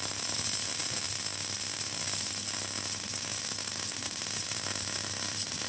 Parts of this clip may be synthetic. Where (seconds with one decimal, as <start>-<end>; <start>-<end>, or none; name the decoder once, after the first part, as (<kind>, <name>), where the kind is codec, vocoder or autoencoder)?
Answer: 0.0-1.2 (vocoder, BigVGAN v2); 3.5-5.7